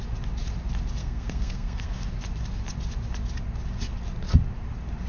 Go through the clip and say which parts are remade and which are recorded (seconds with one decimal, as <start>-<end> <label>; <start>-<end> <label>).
0.0-1.0 recorded; 1.0-2.1 remade; 2.1-5.1 recorded